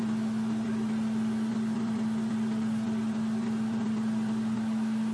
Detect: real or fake real